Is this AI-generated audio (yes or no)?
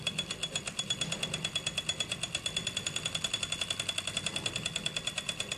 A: no